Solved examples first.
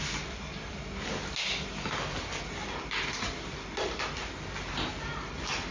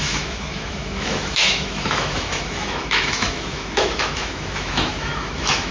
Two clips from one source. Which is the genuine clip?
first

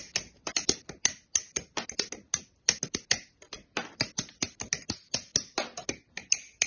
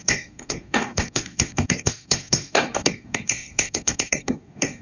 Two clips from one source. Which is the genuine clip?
first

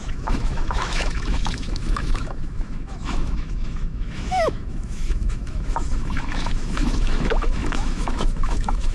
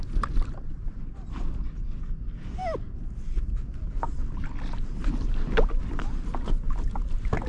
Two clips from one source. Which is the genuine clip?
second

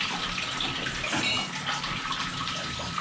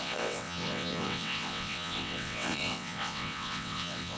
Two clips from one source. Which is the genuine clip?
first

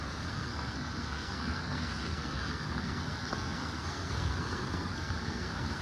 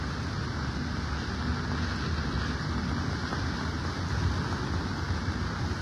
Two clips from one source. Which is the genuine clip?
second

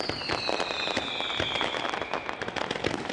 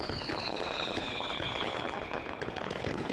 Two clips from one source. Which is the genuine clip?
first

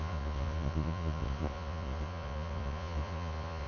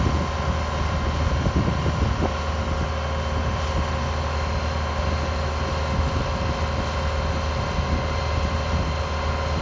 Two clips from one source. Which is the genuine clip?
second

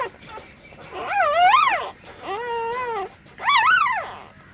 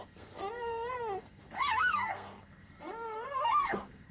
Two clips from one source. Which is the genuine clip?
first